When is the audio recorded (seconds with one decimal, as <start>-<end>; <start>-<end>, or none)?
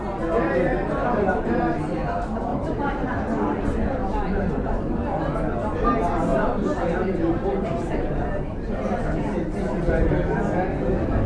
0.0-2.5; 3.6-4.0; 4.5-6.3; 10.1-11.3